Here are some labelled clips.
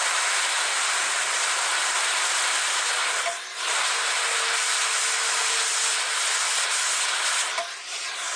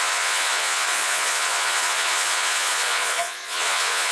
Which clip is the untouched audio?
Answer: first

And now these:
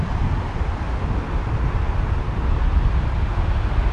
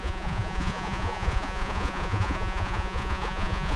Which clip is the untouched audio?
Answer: first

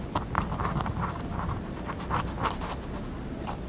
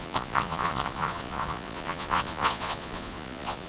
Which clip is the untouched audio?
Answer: first